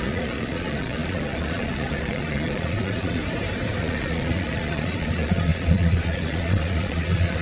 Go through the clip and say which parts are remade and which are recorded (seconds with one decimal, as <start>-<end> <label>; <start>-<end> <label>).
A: 0.0-3.2 remade; 3.2-3.8 recorded; 3.8-7.4 remade